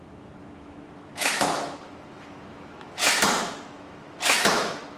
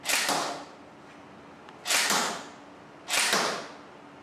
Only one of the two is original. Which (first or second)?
second